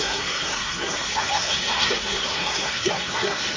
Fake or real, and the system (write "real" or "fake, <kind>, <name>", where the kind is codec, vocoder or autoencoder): fake, codec, SNAC